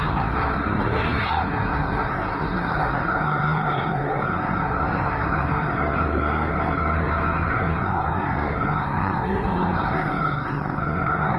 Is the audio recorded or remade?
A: remade